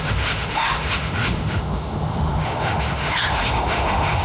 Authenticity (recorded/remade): remade